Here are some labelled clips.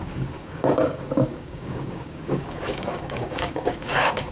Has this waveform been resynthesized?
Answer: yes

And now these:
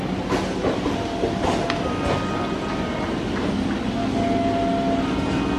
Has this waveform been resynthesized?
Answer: no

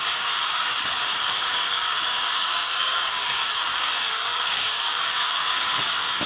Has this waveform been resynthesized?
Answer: yes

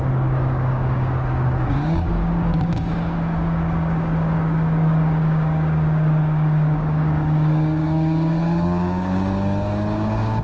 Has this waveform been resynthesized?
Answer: yes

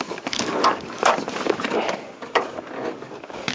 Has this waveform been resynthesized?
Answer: yes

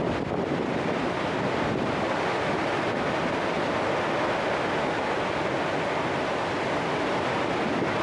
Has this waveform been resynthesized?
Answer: no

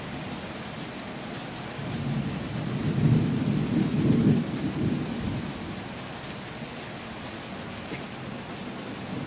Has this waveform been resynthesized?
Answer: no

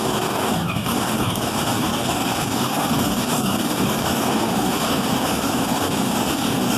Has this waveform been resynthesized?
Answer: yes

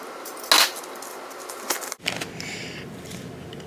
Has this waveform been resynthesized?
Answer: no